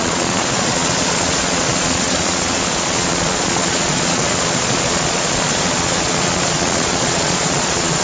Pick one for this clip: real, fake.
fake